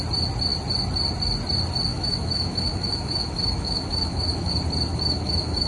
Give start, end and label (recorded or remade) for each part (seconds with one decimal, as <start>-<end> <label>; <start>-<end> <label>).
0.0-1.9 recorded; 1.9-4.5 remade; 4.5-4.9 recorded; 4.9-5.7 remade